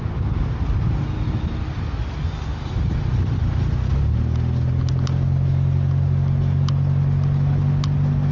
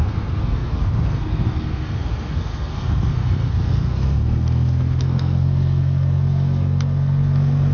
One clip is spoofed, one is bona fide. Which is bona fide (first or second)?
first